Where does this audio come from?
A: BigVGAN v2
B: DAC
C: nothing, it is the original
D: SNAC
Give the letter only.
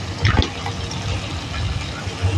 C